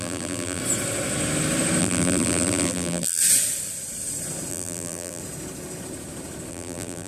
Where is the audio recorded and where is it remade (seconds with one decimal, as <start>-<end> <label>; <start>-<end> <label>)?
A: 0.0-0.6 remade; 0.6-1.8 recorded; 1.8-3.2 remade; 3.2-4.5 recorded; 4.5-5.2 remade; 5.2-6.5 recorded; 6.5-7.1 remade